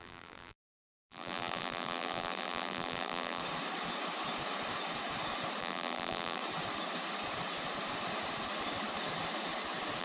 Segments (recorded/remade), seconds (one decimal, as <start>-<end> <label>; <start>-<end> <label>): 0.0-3.4 remade; 3.4-5.6 recorded; 5.6-6.4 remade; 6.4-10.0 recorded